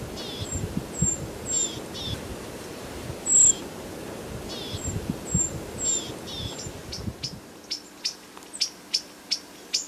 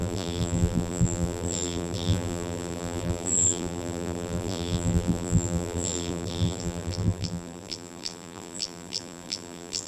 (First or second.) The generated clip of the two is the second